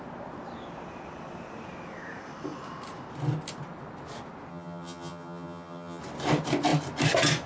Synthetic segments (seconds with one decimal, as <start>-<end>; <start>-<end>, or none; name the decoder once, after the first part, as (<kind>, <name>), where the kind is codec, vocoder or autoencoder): 4.5-6.0 (vocoder, HiFi-GAN)